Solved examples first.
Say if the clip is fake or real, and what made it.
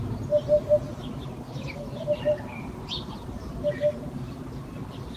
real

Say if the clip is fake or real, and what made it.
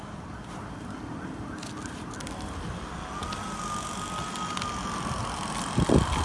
real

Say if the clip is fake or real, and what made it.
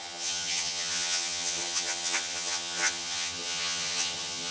fake, vocoder, HiFi-GAN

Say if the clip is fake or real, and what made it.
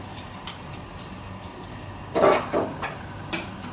real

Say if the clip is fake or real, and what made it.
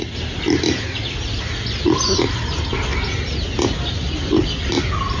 real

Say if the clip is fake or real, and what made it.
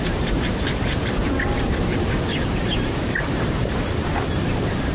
fake, vocoder, BigVGAN v2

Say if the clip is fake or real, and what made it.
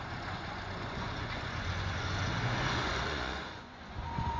fake, vocoder, Vocos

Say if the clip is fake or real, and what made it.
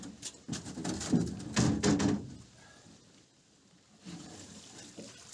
real